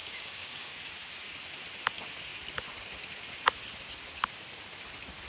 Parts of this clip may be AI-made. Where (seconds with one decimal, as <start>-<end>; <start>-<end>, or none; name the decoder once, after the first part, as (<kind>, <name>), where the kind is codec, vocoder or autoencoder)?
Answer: 0.0-0.8 (codec, DAC)